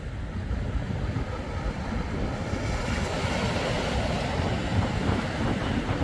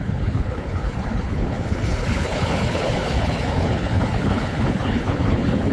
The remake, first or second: second